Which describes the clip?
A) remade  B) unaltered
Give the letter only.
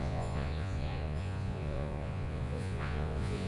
A